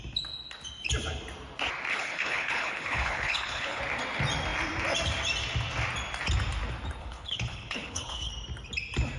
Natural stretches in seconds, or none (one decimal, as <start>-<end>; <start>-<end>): 0.0-1.9; 3.8-7.0; 8.3-9.2

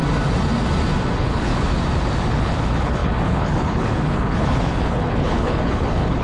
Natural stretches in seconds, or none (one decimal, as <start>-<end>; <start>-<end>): 0.0-1.1; 1.5-2.3